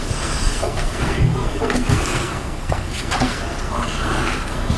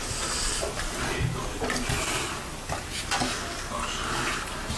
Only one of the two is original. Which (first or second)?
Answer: second